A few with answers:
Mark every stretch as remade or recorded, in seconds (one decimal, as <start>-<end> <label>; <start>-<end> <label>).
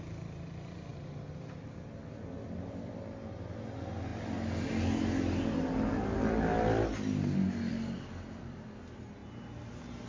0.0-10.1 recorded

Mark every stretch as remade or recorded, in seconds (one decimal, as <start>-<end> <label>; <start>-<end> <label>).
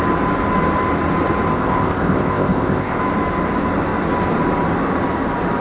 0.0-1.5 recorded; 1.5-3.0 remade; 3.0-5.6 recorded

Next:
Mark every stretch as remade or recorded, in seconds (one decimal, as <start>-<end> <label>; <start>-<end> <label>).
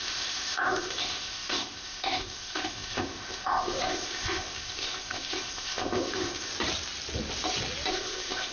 0.0-6.5 remade; 6.5-7.9 recorded; 7.9-8.5 remade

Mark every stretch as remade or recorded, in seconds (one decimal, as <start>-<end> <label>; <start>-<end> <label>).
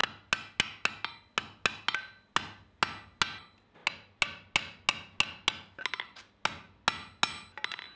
0.0-8.0 recorded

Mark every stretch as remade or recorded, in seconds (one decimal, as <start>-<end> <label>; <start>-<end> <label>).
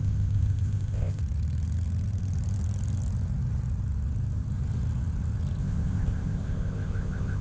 0.0-1.2 remade; 1.2-5.6 recorded; 5.6-7.4 remade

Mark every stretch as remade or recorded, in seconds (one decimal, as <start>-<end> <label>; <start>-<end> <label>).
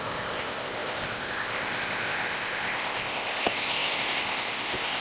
0.0-5.0 remade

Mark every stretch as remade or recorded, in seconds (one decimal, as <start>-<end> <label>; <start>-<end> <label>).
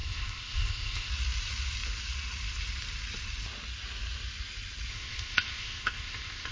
0.0-1.1 remade; 1.1-4.9 recorded; 4.9-6.5 remade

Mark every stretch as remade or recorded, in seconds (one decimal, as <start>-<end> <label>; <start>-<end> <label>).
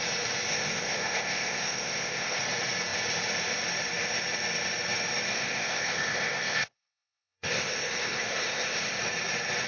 0.0-0.5 recorded; 0.5-2.4 remade; 2.4-5.3 recorded; 5.3-9.0 remade; 9.0-9.7 recorded